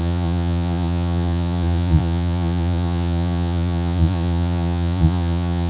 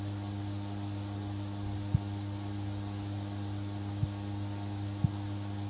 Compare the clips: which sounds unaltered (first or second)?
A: second